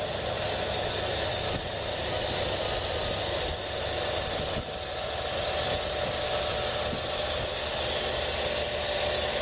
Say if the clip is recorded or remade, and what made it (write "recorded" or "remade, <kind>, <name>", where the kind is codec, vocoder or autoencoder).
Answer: recorded